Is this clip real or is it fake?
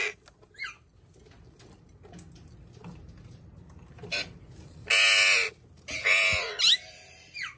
real